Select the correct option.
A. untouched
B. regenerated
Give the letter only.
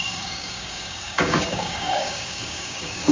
B